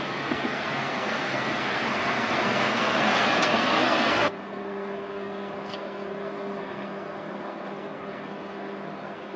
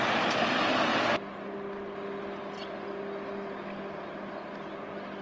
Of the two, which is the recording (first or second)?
second